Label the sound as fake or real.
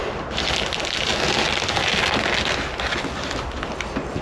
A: real